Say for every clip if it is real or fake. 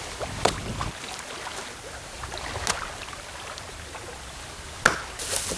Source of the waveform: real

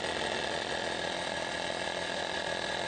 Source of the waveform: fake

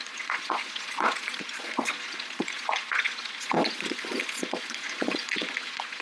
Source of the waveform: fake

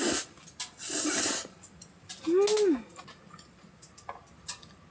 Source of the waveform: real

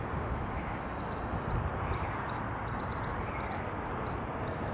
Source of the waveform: real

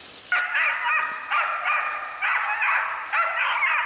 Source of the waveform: real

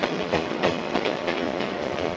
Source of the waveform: fake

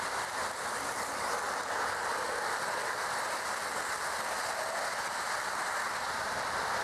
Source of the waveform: real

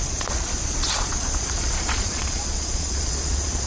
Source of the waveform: fake